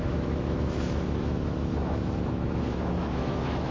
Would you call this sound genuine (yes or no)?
no